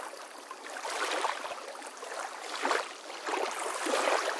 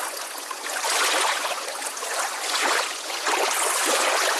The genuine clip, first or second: first